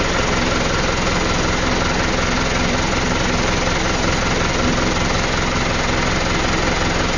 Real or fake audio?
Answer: real